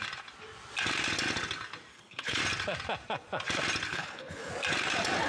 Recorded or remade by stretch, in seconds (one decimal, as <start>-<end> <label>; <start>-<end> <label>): 0.0-1.9 recorded; 1.9-2.4 remade; 2.4-3.9 recorded; 3.9-4.5 remade; 4.5-5.3 recorded